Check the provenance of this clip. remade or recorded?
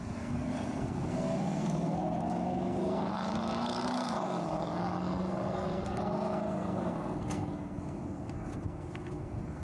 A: remade